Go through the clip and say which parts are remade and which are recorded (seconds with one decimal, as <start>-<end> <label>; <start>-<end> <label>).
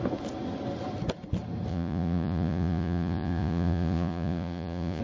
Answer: 0.0-1.7 recorded; 1.7-5.0 remade